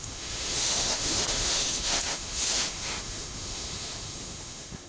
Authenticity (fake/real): fake